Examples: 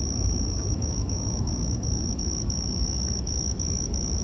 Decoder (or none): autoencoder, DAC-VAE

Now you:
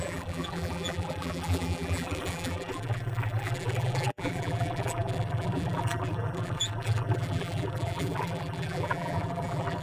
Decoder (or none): vocoder, BigVGAN v2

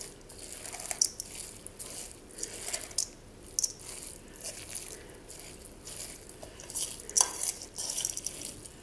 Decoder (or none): none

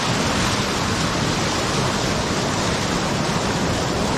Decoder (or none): none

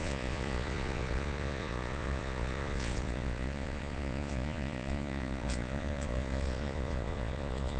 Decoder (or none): vocoder, Vocos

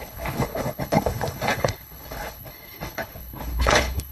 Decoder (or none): codec, HILCodec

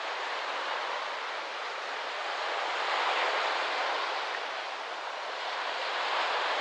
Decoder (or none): none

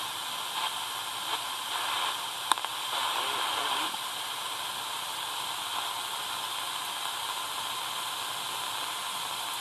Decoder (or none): none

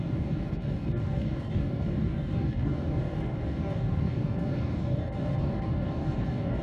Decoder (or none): codec, DAC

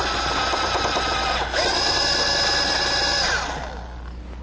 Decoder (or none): none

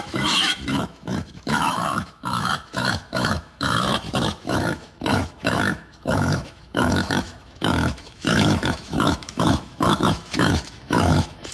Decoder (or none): autoencoder, DAC-VAE